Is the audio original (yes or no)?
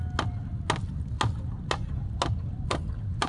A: yes